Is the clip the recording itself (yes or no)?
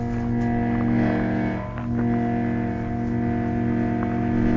yes